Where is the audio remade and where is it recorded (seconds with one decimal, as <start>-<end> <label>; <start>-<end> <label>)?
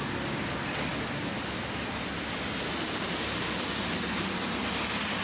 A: 0.0-5.2 recorded